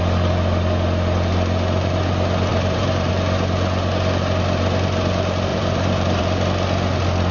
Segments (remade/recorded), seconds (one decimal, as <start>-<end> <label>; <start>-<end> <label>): 0.0-2.5 recorded; 2.5-3.1 remade; 3.1-5.5 recorded; 5.5-6.2 remade; 6.2-7.3 recorded